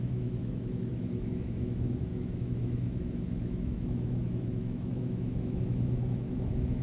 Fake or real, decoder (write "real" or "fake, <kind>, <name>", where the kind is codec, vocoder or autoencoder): fake, autoencoder, DAC-VAE